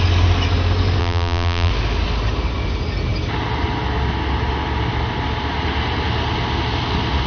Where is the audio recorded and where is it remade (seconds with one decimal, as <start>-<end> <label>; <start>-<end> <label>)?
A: 0.0-1.0 recorded; 1.0-1.7 remade; 1.7-7.3 recorded